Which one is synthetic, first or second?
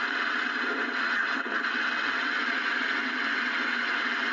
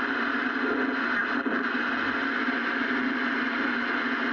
first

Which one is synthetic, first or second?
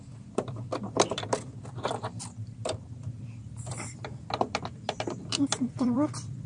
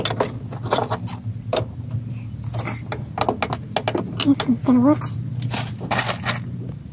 first